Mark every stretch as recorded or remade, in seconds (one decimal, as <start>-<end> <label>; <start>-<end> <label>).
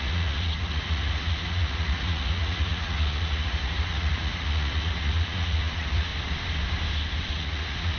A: 0.0-6.1 remade; 6.1-7.3 recorded; 7.3-8.0 remade